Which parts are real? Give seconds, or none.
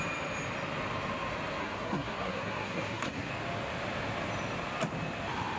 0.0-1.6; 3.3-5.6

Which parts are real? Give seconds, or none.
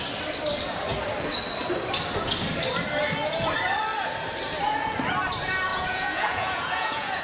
0.0-5.7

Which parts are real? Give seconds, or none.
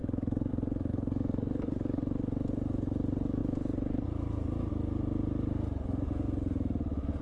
0.5-0.9; 2.0-7.2